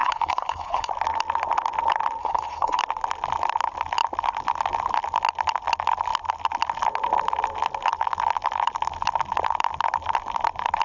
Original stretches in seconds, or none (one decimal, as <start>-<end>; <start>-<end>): 0.9-2.2; 2.8-10.8